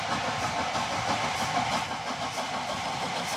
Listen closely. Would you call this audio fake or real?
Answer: real